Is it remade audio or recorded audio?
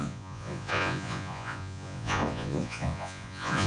remade